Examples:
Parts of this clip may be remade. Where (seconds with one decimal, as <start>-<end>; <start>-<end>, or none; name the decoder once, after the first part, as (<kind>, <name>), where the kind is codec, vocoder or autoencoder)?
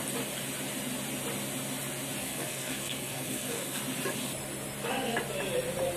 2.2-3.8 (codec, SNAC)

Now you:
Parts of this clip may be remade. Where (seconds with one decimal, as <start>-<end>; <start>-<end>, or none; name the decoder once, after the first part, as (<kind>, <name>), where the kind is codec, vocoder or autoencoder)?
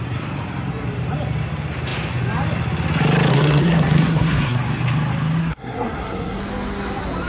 3.3-4.6 (codec, SNAC); 5.4-6.4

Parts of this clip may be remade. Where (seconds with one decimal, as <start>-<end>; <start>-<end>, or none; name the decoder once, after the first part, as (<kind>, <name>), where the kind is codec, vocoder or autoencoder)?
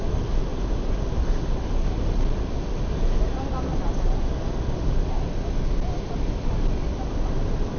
none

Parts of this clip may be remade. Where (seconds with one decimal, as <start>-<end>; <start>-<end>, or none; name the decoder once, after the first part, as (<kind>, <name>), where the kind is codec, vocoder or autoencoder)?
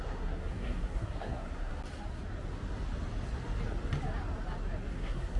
0.0-1.7 (codec, SNAC); 4.9-5.4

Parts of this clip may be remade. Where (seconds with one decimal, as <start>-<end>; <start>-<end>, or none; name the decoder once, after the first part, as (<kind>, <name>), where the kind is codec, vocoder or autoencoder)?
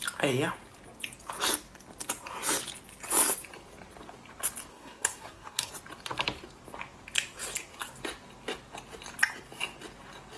4.7-5.7 (codec, SNAC)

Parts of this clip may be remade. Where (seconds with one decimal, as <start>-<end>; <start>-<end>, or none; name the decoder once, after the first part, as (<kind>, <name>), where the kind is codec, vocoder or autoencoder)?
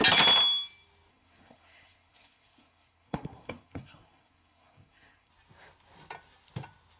1.1-5.3 (codec, SNAC)